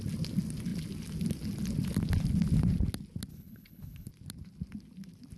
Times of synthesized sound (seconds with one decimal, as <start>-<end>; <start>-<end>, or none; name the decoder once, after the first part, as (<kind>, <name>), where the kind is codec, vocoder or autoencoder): 3.3-4.1 (codec, HILCodec)